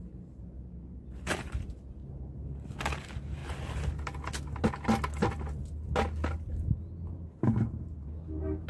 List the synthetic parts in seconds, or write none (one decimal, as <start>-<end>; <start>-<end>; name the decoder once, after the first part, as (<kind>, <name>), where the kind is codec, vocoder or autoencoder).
none

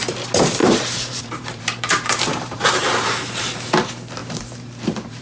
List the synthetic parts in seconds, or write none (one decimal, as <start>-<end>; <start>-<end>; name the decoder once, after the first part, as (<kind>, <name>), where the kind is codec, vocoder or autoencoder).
0.6-3.7 (vocoder, BigVGAN v2); 4.2-5.2

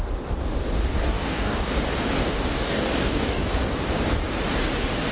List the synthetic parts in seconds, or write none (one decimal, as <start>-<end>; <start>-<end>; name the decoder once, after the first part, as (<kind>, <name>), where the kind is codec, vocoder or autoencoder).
1.0-1.7 (codec, DAC); 2.2-3.5